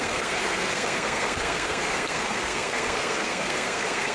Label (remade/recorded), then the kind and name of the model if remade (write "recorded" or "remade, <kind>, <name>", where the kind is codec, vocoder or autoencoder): remade, codec, SNAC